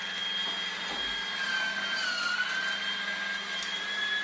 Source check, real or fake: real